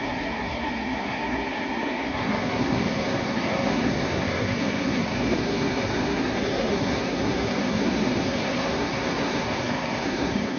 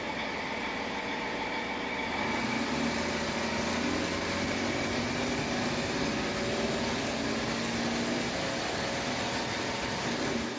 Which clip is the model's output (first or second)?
first